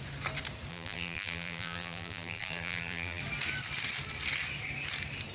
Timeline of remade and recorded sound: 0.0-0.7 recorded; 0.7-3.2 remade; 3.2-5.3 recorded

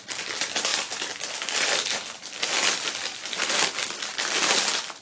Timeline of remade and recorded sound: 0.0-0.7 recorded; 0.7-3.6 remade; 3.6-5.0 recorded

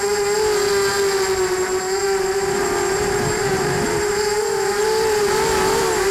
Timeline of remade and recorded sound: 0.0-2.0 recorded; 2.0-6.1 remade